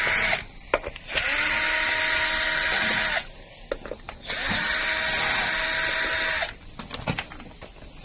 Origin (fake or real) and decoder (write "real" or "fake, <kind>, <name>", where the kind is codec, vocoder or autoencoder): real